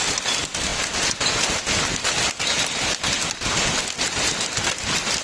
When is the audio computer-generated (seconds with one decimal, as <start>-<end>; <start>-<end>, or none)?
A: none